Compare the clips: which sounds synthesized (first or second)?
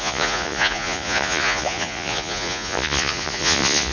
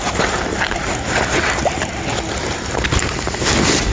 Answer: first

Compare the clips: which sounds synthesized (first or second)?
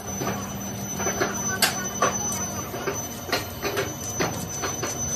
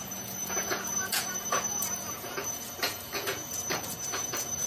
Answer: second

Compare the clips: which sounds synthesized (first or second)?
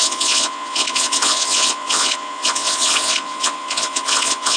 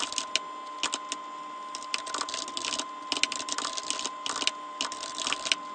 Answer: first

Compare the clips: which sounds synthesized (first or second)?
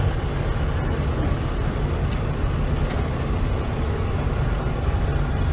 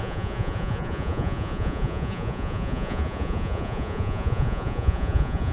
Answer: second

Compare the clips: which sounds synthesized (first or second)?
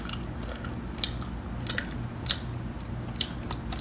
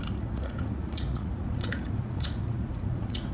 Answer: second